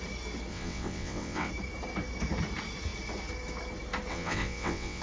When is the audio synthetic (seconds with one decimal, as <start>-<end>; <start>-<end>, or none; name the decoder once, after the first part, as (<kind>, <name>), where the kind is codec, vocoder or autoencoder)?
0.5-1.5 (vocoder, WaveNeXt); 4.1-5.0